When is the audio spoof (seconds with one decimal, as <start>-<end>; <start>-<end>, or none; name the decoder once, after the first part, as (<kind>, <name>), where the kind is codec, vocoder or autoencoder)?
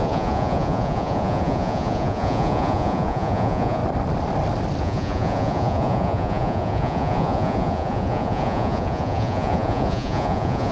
0.0-3.8 (vocoder, Vocos); 4.8-10.7